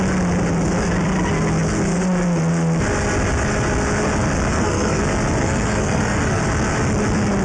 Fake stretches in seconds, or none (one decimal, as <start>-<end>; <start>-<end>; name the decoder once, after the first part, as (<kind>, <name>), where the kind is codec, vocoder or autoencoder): 4.5-5.0 (codec, SNAC); 5.4-6.4